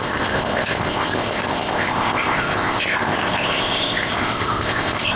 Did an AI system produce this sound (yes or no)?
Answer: yes